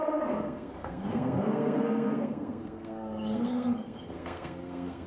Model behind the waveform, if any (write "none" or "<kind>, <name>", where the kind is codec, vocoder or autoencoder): codec, SNAC